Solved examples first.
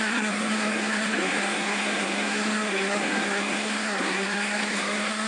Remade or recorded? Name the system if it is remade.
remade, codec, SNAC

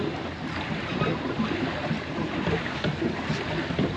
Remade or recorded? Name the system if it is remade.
recorded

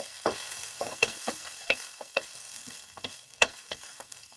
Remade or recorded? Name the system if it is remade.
remade, codec, SNAC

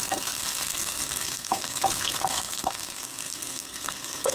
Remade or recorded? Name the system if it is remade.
remade, codec, SNAC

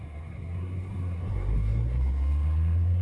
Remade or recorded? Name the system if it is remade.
remade, codec, SNAC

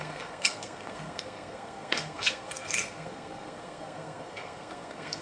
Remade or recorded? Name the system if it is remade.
remade, codec, SNAC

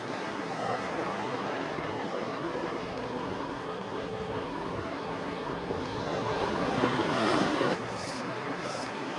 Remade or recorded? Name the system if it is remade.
remade, codec, SNAC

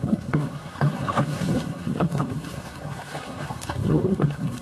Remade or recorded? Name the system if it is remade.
remade, codec, SNAC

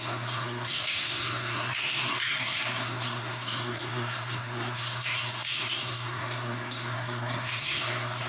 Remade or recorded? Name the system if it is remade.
remade, codec, SNAC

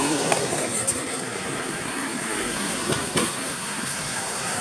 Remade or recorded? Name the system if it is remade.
remade, codec, SNAC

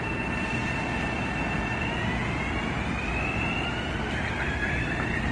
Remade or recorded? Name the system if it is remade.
recorded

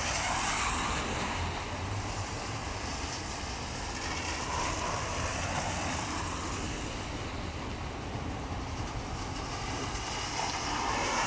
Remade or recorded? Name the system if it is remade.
recorded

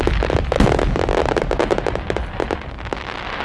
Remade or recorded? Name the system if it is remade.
recorded